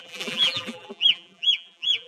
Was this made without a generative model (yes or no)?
no